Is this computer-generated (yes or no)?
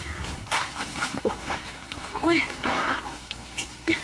yes